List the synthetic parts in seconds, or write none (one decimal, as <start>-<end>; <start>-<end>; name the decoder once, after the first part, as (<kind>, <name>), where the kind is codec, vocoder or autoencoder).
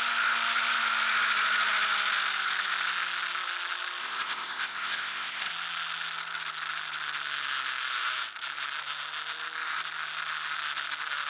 4.0-5.5 (codec, ZipCodec)